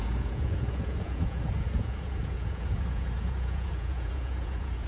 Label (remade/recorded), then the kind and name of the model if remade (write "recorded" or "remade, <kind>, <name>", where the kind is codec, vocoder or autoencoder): remade, vocoder, Vocos